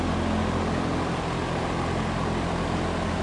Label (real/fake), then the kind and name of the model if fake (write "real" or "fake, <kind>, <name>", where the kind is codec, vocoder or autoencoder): real